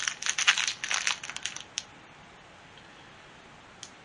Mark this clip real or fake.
real